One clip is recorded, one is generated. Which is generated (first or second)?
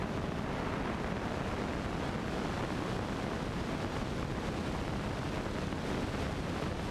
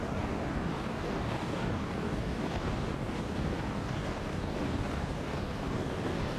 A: second